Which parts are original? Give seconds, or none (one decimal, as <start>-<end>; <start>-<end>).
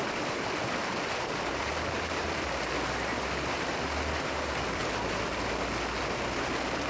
0.0-6.9